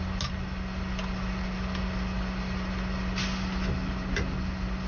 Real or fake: real